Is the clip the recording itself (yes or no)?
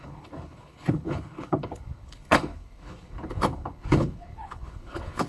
no